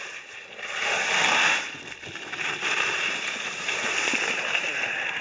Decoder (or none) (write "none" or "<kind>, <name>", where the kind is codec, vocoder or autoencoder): none